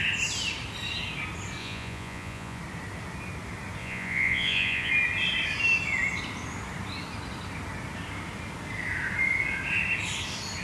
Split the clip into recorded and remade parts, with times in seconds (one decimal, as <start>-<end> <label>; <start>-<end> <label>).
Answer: 0.0-1.6 recorded; 1.6-2.6 remade; 2.6-3.8 recorded; 3.8-4.9 remade; 4.9-10.6 recorded